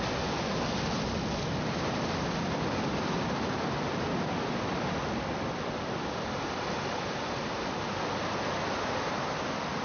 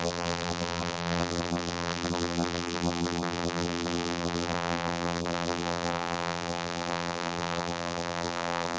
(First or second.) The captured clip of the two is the first